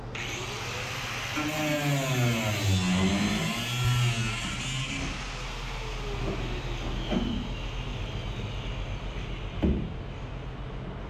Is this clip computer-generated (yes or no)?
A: no